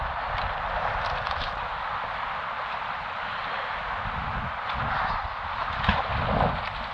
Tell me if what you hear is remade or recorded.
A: recorded